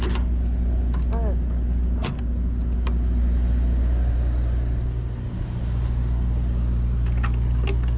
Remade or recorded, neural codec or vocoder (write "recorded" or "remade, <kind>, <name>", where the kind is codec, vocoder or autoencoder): recorded